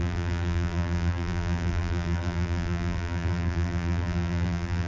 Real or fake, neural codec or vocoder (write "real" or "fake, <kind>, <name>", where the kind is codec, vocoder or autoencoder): fake, vocoder, BigVGAN v2